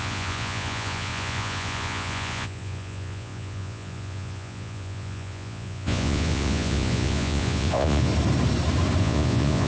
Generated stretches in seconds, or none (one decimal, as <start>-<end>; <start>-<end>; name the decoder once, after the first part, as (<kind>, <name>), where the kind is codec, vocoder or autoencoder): 0.0-8.1 (vocoder, Vocos); 9.0-9.7